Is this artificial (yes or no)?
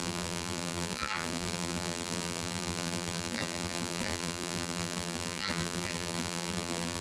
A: yes